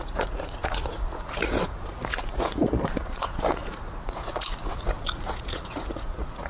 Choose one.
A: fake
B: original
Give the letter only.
A